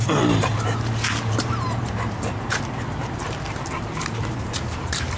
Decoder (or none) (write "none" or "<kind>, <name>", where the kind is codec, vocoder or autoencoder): vocoder, BigVGAN v2